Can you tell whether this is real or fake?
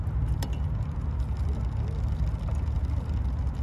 real